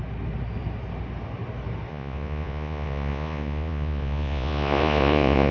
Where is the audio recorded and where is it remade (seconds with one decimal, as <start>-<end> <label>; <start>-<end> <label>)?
0.0-1.9 recorded; 1.9-5.5 remade